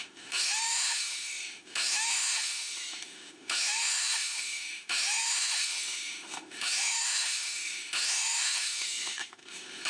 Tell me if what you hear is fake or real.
fake